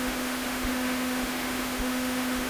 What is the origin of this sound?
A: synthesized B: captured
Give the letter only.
A